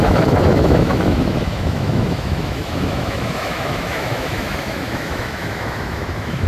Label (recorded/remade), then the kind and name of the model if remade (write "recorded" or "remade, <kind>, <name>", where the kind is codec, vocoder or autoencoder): remade, autoencoder, DAC-VAE